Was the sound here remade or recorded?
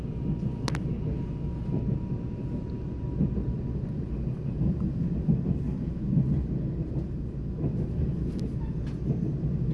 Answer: recorded